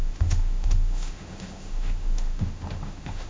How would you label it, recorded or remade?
remade